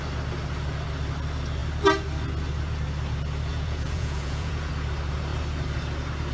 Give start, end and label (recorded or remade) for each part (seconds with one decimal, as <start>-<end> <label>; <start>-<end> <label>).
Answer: 0.0-3.5 recorded; 3.5-4.7 remade; 4.7-6.3 recorded